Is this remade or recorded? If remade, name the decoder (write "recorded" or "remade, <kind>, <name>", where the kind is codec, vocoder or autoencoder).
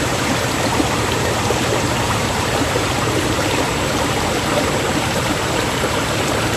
remade, vocoder, BigVGAN v2